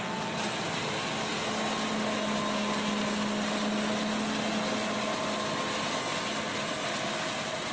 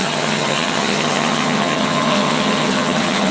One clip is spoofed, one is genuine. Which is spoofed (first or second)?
second